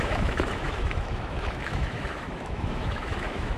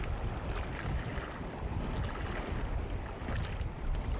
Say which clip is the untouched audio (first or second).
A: second